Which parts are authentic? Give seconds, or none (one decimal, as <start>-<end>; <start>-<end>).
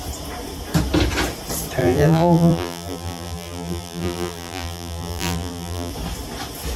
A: 0.0-1.8; 5.9-6.8